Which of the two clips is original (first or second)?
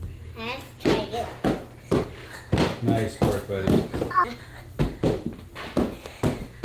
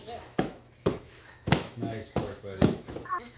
first